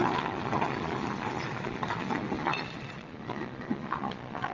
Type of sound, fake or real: fake